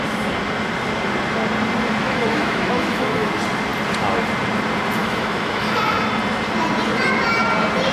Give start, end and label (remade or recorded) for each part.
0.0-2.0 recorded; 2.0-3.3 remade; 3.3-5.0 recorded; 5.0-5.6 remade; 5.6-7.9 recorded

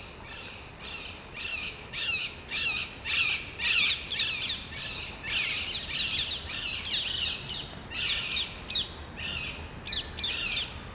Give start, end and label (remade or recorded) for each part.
0.0-1.5 recorded; 1.5-3.1 remade; 3.1-10.9 recorded